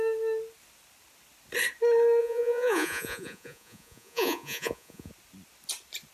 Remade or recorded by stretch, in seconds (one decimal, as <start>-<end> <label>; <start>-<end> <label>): 0.0-2.2 recorded; 2.2-5.1 remade; 5.1-6.1 recorded